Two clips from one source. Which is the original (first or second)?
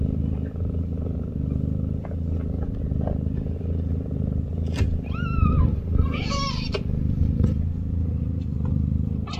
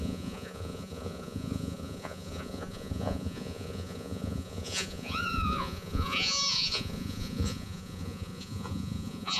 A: first